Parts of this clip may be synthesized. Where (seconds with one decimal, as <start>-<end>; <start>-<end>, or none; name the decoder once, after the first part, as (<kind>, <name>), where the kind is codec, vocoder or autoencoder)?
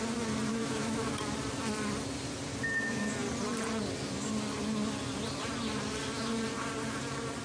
0.5-1.1 (autoencoder, DAC-VAE)